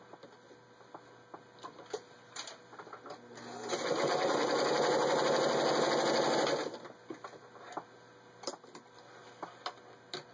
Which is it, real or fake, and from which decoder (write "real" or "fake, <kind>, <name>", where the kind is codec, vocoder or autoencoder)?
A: real